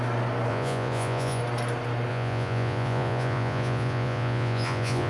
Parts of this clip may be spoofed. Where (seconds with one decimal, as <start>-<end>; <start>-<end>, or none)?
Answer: 0.5-1.4; 2.1-5.1